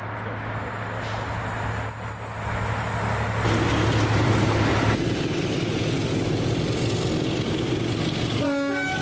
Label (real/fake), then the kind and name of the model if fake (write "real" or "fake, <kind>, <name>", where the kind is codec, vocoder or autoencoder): real